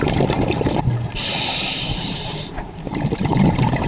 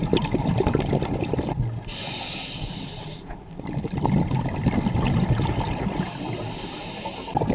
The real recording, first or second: second